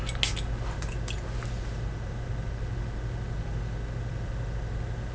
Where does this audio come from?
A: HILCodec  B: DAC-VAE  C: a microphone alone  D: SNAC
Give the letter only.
C